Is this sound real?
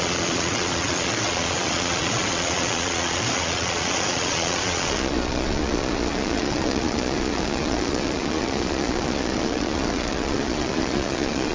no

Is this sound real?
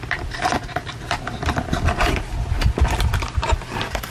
yes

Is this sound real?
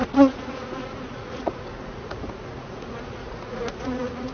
no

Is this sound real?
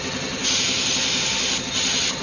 yes